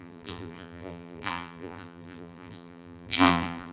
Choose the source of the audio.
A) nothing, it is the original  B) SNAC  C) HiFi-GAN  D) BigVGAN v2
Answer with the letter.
D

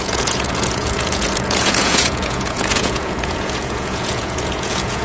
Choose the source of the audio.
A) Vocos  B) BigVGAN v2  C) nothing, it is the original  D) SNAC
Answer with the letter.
A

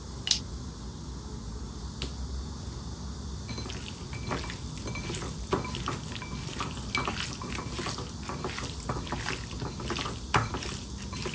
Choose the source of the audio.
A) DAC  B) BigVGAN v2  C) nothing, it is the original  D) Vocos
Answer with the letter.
C